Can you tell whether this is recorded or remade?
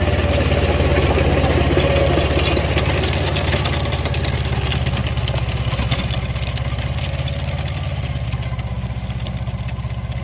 recorded